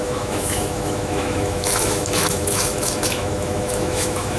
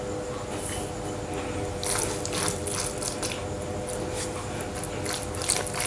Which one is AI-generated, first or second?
first